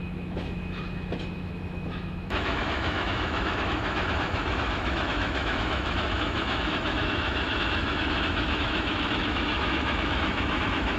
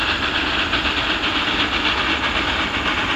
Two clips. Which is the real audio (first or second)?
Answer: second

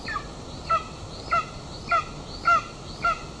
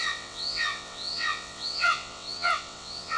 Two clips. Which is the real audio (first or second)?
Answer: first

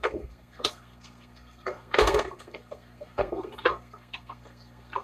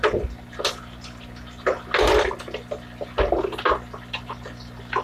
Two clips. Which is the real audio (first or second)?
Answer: second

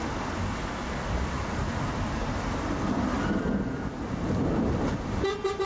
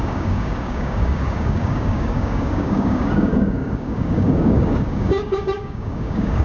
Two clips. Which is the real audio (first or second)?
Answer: first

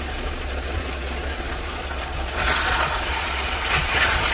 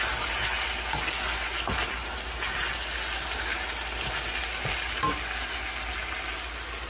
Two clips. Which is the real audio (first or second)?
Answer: second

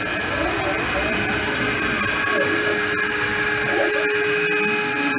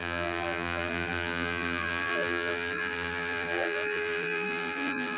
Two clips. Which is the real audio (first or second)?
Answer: first